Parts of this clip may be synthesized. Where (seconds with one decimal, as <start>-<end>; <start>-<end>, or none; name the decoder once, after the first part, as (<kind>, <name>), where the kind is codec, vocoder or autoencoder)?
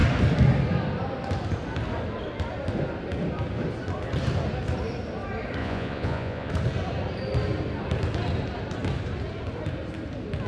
5.6-6.5 (vocoder, Vocos)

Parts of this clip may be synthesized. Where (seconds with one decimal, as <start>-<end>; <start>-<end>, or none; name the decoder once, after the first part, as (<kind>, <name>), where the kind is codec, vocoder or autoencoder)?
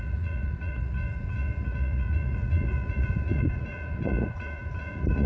0.0-5.3 (vocoder, Vocos)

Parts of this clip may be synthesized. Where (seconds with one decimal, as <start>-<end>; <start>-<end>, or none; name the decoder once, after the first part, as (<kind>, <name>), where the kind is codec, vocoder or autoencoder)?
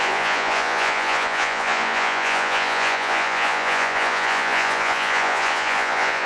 0.0-6.3 (vocoder, Vocos)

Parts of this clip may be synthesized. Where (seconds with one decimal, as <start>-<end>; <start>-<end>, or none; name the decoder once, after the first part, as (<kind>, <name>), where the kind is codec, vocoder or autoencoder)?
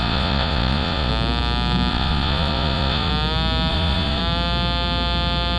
0.0-1.1 (vocoder, Vocos); 1.9-3.1; 3.7-4.2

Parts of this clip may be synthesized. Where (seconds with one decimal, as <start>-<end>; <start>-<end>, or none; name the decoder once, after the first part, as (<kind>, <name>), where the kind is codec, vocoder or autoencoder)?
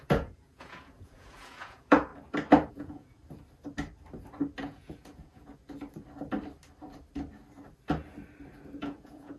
0.0-2.1 (vocoder, Vocos); 2.7-3.2; 4.6-5.5; 8.8-9.4